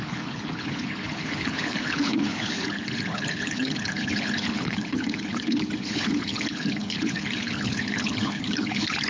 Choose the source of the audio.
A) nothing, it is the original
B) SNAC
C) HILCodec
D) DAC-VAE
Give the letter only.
C